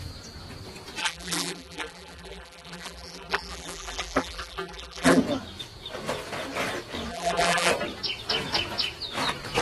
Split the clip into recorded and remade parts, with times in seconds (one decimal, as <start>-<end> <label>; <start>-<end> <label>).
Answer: 0.0-1.0 recorded; 1.0-5.2 remade; 5.2-7.1 recorded; 7.1-7.7 remade; 7.7-9.6 recorded